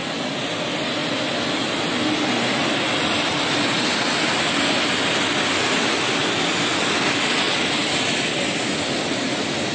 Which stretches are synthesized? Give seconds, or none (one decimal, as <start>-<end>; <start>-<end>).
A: none